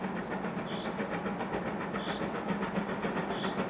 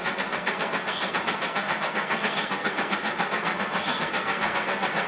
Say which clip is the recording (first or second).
first